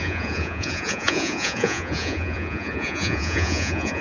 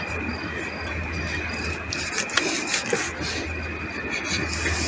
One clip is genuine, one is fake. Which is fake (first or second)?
first